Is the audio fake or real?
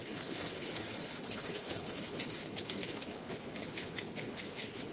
fake